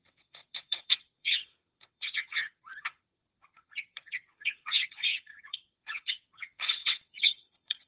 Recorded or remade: remade